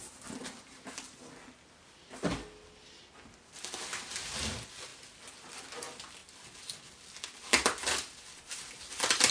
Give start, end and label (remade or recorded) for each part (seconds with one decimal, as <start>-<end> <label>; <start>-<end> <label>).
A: 0.0-9.3 recorded